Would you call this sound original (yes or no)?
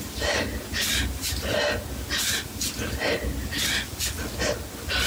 yes